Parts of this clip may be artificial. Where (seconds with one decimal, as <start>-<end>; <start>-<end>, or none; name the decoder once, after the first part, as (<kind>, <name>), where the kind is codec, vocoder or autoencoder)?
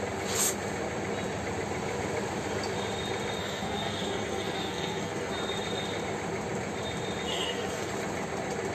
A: 3.4-5.3 (codec, SNAC); 7.3-7.9